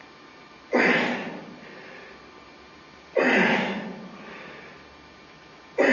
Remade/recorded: recorded